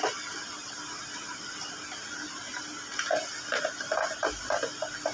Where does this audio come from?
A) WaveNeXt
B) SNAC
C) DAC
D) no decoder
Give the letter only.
D